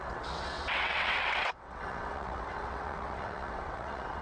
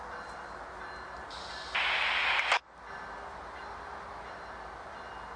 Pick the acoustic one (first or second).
second